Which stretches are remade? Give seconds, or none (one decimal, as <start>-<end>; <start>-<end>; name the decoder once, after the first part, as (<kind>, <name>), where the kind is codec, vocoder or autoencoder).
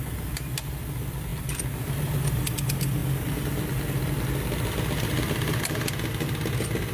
none